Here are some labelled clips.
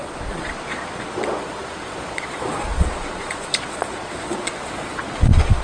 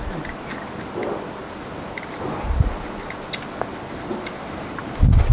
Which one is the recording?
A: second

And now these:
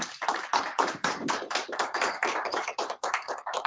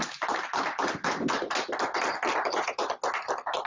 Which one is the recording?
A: second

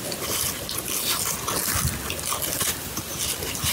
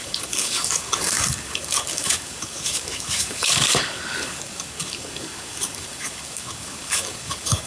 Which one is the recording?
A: first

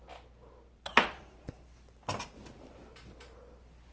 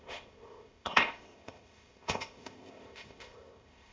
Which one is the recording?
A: first